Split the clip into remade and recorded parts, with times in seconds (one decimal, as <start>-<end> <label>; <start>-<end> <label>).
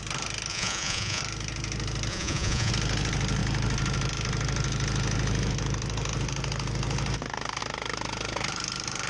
0.0-0.5 recorded; 0.5-1.2 remade; 1.2-2.1 recorded; 2.1-2.7 remade; 2.7-9.1 recorded